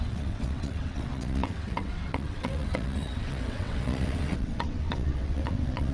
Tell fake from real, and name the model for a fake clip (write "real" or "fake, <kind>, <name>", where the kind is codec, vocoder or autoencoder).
fake, vocoder, WaveNeXt